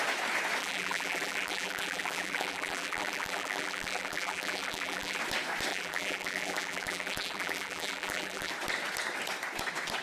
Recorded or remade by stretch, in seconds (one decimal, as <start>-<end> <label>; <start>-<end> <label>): 0.0-0.6 recorded; 0.6-5.2 remade; 5.2-5.7 recorded; 5.7-8.5 remade; 8.5-10.0 recorded